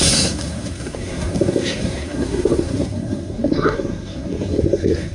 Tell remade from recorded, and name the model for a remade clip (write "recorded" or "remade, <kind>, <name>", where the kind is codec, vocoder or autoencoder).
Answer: remade, codec, SNAC